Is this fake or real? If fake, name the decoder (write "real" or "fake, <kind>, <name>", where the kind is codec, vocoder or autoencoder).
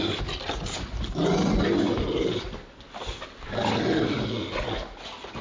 real